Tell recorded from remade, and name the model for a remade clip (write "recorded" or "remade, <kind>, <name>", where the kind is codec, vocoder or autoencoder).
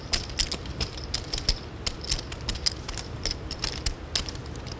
recorded